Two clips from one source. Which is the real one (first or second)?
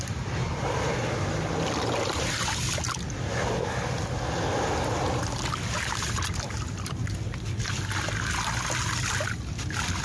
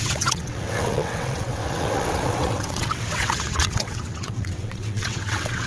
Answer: first